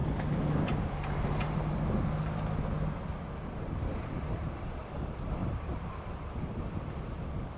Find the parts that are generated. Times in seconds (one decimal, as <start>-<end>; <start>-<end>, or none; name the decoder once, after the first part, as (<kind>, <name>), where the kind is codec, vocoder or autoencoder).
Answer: none